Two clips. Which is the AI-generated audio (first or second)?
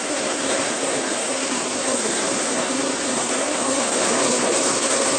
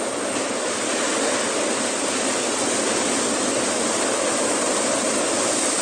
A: first